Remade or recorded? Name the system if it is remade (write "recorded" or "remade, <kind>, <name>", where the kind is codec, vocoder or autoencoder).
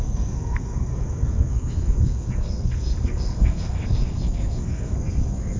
remade, codec, SNAC